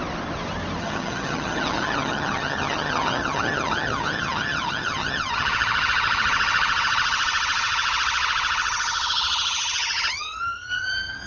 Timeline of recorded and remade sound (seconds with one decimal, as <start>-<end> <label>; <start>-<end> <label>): 0.0-0.8 recorded; 0.8-11.3 remade